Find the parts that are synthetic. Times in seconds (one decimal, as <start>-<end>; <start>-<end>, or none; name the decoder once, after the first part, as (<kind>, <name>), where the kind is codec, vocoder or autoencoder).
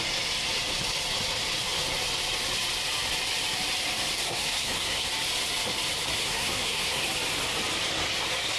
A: 4.1-5.1 (codec, SNAC); 6.2-7.0